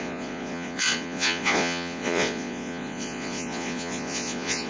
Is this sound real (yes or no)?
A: no